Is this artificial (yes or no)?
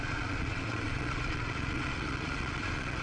yes